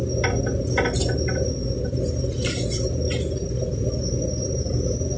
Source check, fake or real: real